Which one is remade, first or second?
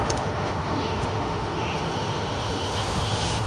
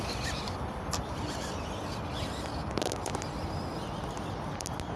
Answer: first